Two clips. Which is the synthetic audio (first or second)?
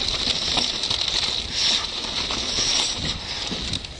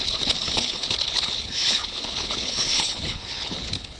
second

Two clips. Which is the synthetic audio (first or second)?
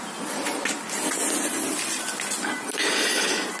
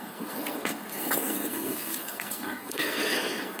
second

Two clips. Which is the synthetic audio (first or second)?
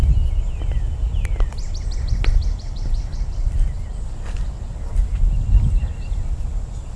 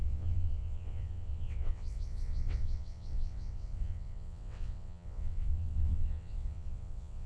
second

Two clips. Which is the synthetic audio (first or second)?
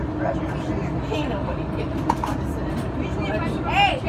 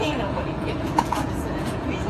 second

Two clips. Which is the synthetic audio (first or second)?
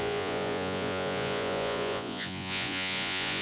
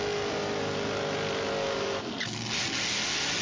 first